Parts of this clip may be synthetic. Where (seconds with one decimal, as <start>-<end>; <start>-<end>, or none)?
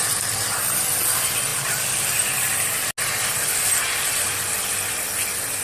none